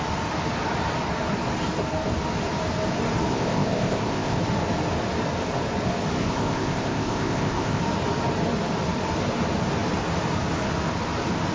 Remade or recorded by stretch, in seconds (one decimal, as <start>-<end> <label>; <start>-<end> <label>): 0.0-3.3 recorded; 3.3-4.4 remade; 4.4-6.2 recorded; 6.2-7.8 remade; 7.8-11.5 recorded